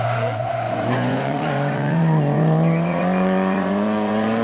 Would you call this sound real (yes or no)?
no